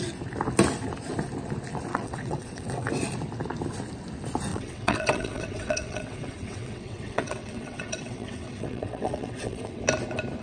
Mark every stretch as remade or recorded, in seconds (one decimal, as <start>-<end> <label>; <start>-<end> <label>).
0.0-1.9 recorded; 1.9-2.9 remade; 2.9-4.5 recorded; 4.5-9.8 remade; 9.8-10.4 recorded